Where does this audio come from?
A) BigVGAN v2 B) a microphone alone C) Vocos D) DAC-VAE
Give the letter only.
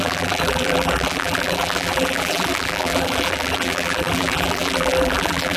A